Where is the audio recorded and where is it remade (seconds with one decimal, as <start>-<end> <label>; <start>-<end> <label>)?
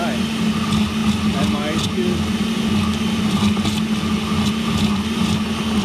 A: 0.0-5.8 recorded